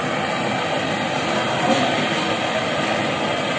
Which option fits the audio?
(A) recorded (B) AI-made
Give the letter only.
A